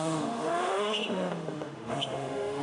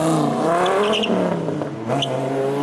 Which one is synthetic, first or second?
first